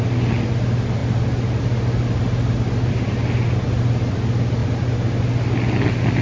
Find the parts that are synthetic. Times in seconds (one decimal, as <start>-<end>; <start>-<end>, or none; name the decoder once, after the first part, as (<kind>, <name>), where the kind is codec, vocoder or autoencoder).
none